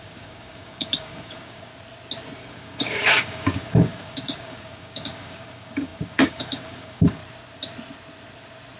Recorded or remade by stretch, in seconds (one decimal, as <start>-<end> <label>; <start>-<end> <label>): 0.0-1.7 remade; 1.7-2.4 recorded; 2.4-7.2 remade; 7.2-8.8 recorded